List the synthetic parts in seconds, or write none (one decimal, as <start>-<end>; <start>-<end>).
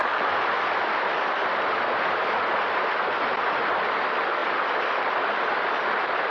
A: none